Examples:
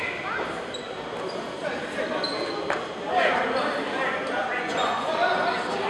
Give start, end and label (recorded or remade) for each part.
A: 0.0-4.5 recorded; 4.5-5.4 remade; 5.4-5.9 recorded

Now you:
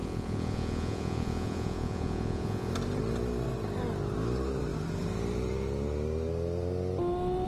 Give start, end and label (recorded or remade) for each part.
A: 0.0-2.7 remade; 2.7-7.5 recorded

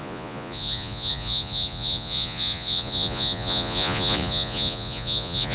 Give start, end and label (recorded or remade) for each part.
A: 0.0-5.5 remade

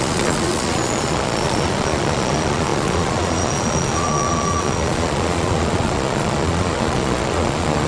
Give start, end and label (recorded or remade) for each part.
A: 0.0-7.9 remade

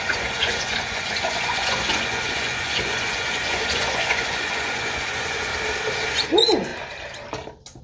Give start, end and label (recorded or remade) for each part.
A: 0.0-5.5 remade; 5.5-6.1 recorded; 6.1-6.7 remade; 6.7-7.8 recorded

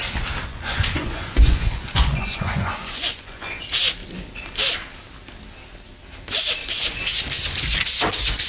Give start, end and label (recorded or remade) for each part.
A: 0.0-0.5 recorded; 0.5-3.6 remade; 3.6-6.6 recorded; 6.6-7.2 remade; 7.2-8.5 recorded

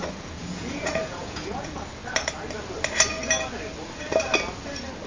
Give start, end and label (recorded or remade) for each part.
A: 0.0-2.0 remade; 2.0-5.1 recorded